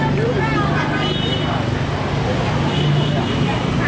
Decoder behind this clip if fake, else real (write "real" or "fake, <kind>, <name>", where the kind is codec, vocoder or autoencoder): real